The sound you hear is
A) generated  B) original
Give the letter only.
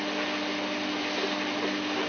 B